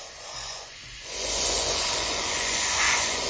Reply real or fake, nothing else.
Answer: fake